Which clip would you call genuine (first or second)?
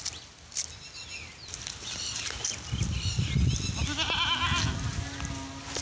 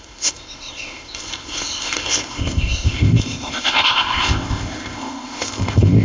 first